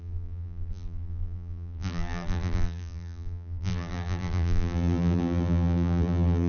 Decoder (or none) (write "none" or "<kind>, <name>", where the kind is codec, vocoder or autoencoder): vocoder, BigVGAN v2